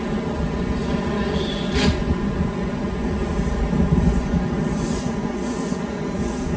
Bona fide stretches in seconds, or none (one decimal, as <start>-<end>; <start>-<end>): 3.2-3.8